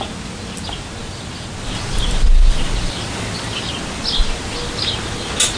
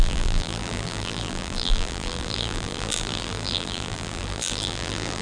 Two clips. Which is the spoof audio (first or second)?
second